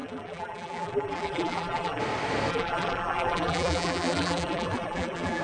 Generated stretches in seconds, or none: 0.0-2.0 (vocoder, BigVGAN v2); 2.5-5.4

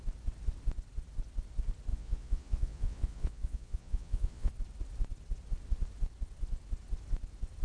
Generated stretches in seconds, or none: 1.9-4.5 (vocoder, Vocos)